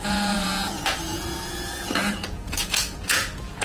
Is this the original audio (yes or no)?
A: no